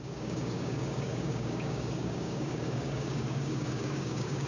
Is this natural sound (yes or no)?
no